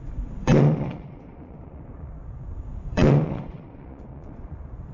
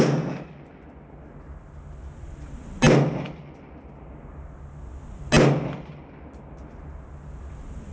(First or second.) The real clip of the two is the second